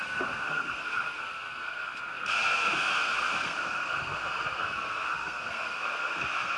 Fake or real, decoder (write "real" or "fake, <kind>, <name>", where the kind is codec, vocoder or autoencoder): fake, codec, SNAC